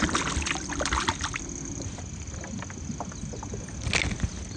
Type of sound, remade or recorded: recorded